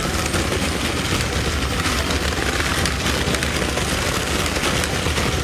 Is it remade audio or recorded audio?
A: recorded